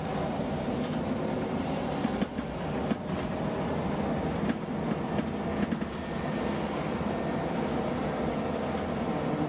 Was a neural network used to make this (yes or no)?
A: no